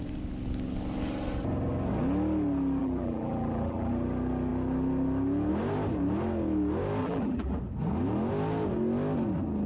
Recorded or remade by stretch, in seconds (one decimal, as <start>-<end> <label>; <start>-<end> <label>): 0.0-2.8 recorded; 2.8-3.9 remade; 3.9-7.0 recorded; 7.0-7.6 remade; 7.6-9.7 recorded